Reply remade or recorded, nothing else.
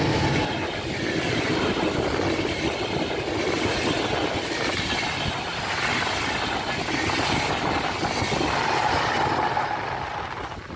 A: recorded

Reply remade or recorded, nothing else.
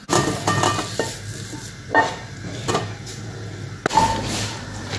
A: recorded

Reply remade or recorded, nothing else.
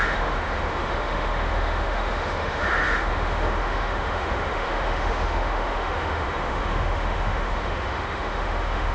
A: remade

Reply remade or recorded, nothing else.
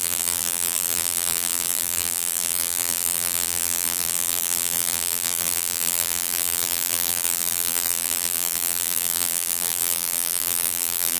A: remade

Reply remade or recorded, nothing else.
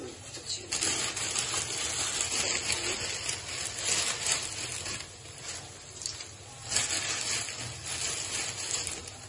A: recorded